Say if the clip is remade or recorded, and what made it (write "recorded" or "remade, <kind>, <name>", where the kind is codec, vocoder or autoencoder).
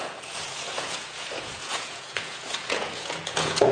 remade, vocoder, Vocos